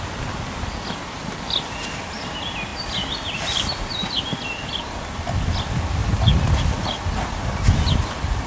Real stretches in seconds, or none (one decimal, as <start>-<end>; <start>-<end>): 0.0-8.5

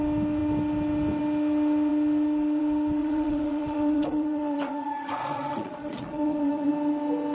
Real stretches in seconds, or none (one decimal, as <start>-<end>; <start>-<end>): 0.0-3.0; 6.7-7.3

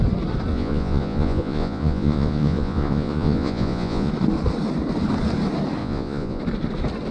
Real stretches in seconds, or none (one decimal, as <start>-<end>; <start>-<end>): 0.0-0.5; 4.1-5.8; 6.4-7.1

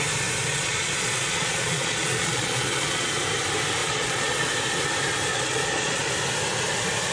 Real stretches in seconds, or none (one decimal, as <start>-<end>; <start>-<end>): 0.0-0.5; 3.1-3.8; 4.5-5.3; 6.1-7.1

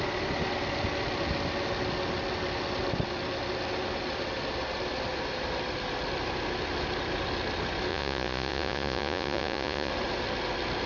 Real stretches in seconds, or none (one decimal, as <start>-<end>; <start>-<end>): 0.0-7.9; 9.9-10.9

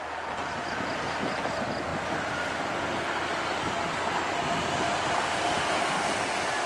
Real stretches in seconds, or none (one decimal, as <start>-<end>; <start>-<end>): 0.0-6.7

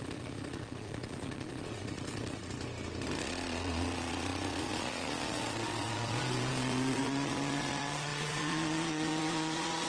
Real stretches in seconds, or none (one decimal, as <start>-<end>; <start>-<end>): 2.5-3.2

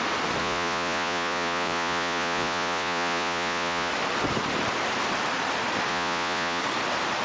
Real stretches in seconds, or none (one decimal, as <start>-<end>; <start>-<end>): 0.0-0.4; 3.9-5.9; 6.6-7.2